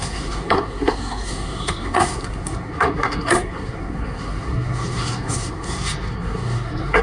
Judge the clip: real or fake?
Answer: fake